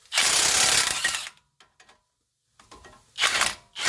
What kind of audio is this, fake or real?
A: real